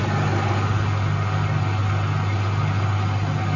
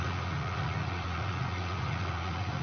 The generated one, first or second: second